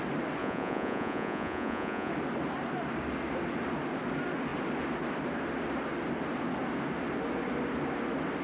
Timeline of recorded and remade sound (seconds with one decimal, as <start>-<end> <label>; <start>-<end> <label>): 0.0-0.4 recorded; 0.4-2.1 remade; 2.1-8.4 recorded